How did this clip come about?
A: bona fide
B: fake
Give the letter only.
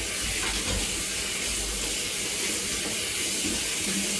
A